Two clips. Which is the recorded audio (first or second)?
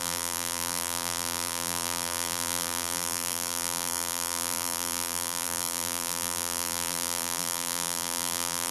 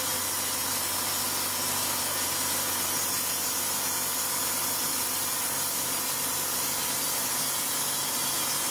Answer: second